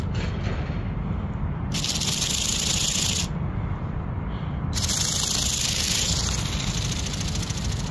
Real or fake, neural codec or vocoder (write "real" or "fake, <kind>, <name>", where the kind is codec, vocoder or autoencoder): real